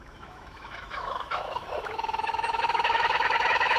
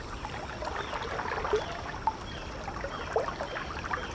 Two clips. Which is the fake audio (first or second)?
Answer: first